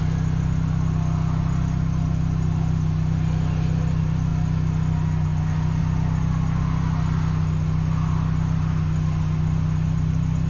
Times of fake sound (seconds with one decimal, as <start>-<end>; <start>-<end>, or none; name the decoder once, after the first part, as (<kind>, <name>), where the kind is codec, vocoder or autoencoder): none